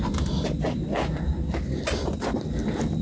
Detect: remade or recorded recorded